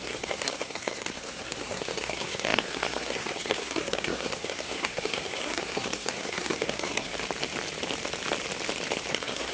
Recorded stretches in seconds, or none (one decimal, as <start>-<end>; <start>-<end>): 7.1-9.1